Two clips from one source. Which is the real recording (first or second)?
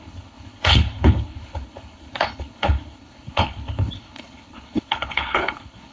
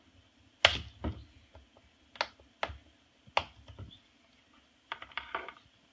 second